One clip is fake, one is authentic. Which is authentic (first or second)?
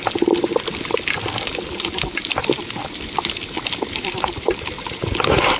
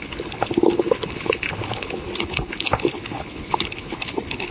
first